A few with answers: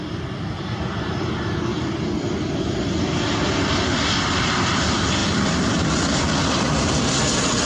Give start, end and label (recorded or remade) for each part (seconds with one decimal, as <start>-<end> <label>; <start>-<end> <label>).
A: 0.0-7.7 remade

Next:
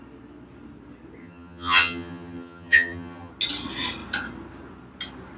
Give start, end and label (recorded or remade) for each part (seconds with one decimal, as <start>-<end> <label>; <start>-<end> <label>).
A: 0.0-1.2 recorded; 1.2-3.3 remade; 3.3-5.4 recorded

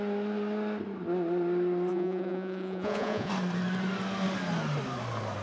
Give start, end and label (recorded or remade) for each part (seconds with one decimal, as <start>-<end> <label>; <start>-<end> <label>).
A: 0.0-1.9 recorded; 1.9-3.3 remade; 3.3-5.4 recorded

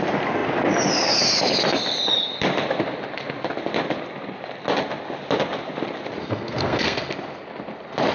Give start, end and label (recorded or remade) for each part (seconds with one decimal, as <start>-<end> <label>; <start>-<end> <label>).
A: 0.0-6.2 recorded; 6.2-7.1 remade; 7.1-8.1 recorded